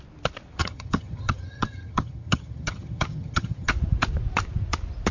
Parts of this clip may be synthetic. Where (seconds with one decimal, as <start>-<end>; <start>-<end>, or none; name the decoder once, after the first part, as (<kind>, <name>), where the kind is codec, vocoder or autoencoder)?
0.6-3.7 (vocoder, HiFi-GAN)

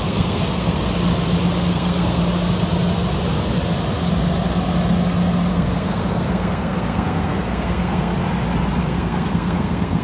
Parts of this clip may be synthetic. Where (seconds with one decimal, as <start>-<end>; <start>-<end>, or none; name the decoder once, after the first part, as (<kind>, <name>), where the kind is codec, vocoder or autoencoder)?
0.0-0.9 (codec, SNAC); 1.7-2.2; 5.5-8.2; 8.8-10.0

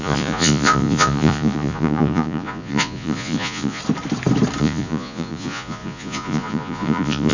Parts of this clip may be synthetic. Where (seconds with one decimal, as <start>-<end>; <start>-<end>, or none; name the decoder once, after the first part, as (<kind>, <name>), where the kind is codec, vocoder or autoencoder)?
0.0-3.8 (vocoder, Vocos); 4.6-7.3

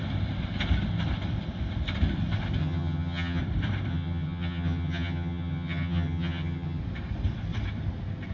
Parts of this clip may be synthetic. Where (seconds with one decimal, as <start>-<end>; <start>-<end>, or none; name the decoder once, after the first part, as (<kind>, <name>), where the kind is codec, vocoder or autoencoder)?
2.6-3.4 (vocoder, HiFi-GAN); 3.9-6.8

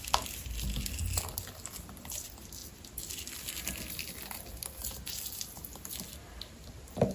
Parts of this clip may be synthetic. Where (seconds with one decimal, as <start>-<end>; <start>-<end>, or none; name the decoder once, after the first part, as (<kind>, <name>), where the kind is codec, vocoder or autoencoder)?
none

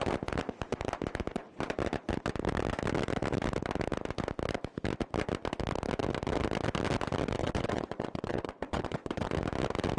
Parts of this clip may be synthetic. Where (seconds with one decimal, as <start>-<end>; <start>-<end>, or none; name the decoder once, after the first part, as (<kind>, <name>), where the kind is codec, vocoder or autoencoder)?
7.4-9.3 (vocoder, WaveNeXt)

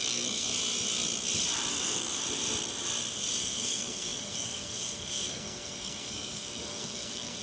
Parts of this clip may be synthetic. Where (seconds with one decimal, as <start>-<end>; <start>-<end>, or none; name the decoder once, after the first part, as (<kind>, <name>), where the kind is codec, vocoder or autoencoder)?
0.0-0.6 (codec, SNAC); 1.7-2.2; 3.4-7.4

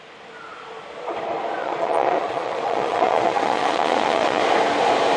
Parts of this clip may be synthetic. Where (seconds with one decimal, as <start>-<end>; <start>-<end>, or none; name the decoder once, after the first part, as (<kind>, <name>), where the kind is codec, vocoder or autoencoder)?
1.6-4.4 (vocoder, Vocos)